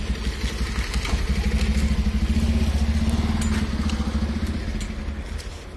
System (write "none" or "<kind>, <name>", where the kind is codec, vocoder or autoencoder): none